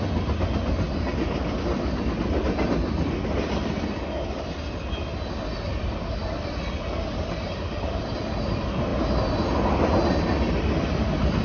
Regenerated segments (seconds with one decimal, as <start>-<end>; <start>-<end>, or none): none